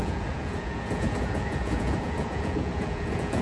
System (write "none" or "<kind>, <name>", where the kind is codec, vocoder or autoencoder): vocoder, Vocos